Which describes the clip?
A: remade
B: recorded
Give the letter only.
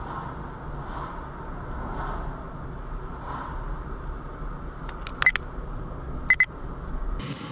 B